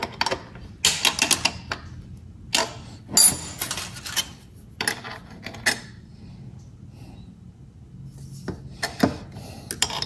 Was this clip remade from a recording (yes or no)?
no